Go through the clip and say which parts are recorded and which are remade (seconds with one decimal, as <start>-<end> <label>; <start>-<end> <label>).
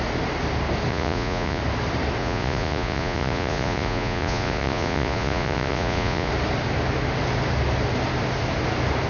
0.0-0.9 recorded; 0.9-1.6 remade; 1.6-2.2 recorded; 2.2-6.3 remade; 6.3-9.1 recorded